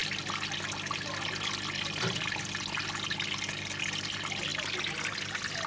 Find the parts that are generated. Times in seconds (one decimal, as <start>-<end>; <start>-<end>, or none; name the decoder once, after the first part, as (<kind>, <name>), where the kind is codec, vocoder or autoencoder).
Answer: none